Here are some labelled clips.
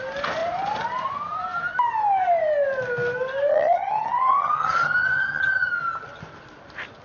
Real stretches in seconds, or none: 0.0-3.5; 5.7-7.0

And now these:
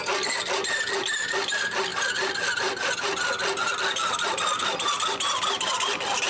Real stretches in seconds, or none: 0.0-6.3